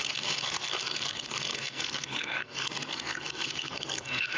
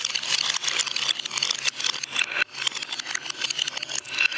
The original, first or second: second